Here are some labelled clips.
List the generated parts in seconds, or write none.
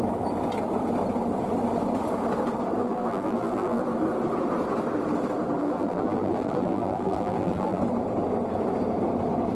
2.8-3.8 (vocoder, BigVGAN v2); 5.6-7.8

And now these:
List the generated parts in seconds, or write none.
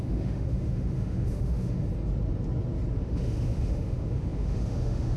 0.0-1.9 (autoencoder, DAC-VAE); 3.0-5.2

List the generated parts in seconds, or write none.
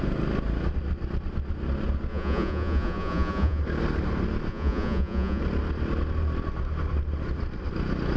2.1-3.6 (vocoder, Vocos); 4.5-5.4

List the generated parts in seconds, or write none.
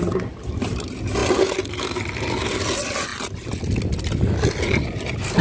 none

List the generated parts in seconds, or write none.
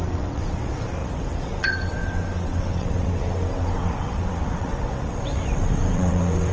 0.0-6.5 (vocoder, WaveNeXt)